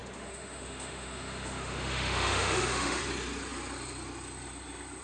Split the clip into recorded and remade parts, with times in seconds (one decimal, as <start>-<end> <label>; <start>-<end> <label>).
0.0-3.0 remade; 3.0-5.0 recorded